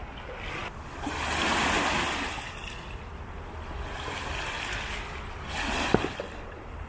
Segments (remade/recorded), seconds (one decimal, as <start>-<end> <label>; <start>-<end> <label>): 0.0-6.9 recorded